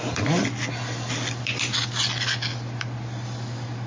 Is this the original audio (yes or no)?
yes